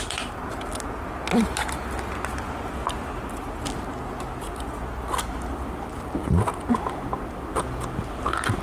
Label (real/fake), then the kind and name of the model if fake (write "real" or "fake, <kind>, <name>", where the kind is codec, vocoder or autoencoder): real